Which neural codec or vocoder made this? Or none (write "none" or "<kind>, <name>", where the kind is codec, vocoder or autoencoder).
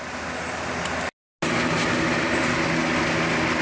none